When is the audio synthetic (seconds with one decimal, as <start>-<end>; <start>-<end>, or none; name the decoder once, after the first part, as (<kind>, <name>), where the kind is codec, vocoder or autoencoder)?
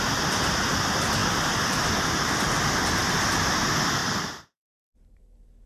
4.0-5.2 (vocoder, BigVGAN v2)